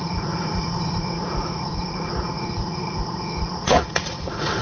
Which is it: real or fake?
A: fake